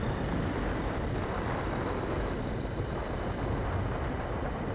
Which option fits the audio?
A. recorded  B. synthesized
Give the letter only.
A